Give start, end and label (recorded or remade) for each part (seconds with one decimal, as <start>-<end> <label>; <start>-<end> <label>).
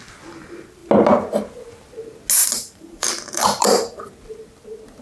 0.0-2.4 recorded; 2.4-4.1 remade; 4.1-5.0 recorded